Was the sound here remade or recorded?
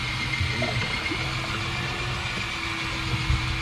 recorded